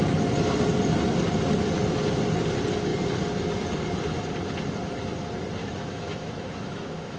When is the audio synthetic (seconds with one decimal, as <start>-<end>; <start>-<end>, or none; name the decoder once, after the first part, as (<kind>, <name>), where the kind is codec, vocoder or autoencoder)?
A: 5.6-7.2 (autoencoder, DAC-VAE)